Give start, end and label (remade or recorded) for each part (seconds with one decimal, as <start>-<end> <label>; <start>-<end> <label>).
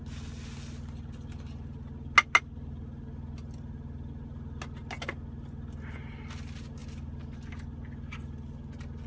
0.0-9.1 recorded